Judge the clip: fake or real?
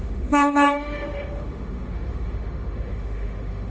fake